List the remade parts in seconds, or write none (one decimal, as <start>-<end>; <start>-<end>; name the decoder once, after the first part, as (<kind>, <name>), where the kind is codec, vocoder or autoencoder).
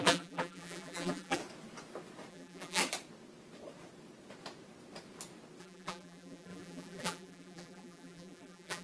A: 0.0-1.4 (vocoder, BigVGAN v2); 2.3-2.8; 5.6-8.8